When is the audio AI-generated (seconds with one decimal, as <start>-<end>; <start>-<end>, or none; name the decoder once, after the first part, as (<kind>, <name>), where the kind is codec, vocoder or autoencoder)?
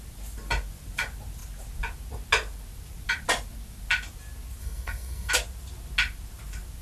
4.6-5.3 (codec, SNAC)